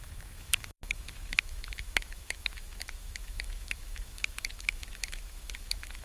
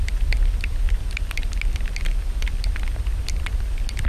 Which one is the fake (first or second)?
first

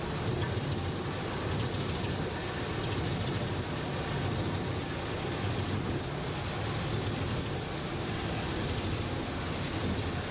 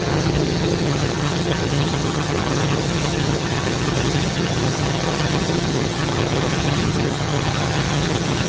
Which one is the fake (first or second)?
second